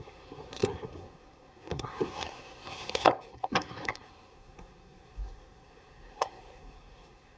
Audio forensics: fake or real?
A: fake